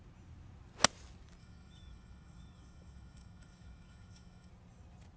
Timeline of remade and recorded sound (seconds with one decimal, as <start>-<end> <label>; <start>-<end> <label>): 0.0-1.4 recorded; 1.4-4.5 remade; 4.5-5.2 recorded

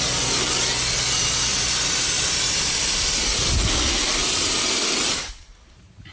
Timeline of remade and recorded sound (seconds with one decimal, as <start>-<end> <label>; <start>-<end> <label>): 0.0-6.1 recorded